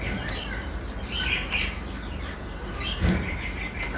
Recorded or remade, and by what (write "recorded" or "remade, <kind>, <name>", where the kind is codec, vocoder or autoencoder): remade, vocoder, BigVGAN v2